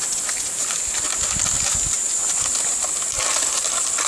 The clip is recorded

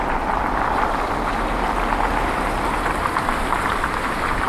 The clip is remade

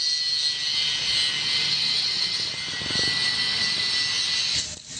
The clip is recorded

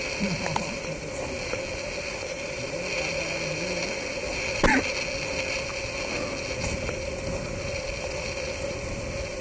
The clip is recorded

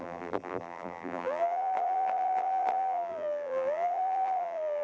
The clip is remade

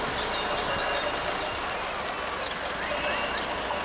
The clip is recorded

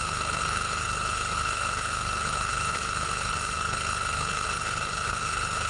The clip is remade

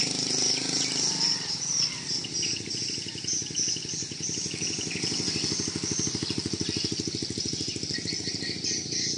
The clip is recorded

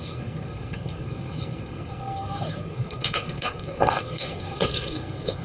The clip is remade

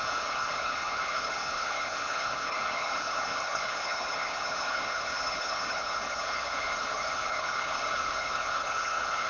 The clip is remade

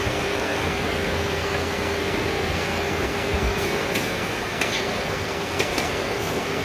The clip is remade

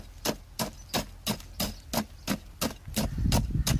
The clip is recorded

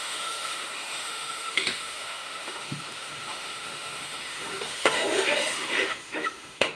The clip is remade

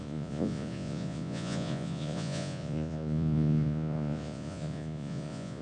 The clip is remade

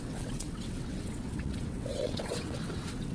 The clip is remade